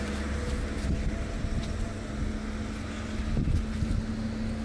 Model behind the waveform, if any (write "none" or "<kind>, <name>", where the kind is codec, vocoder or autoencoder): none